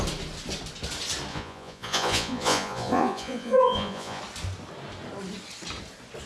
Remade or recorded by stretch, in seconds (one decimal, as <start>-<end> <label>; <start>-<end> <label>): 0.0-1.3 recorded; 1.3-4.2 remade; 4.2-6.3 recorded